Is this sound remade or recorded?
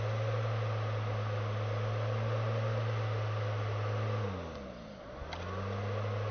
recorded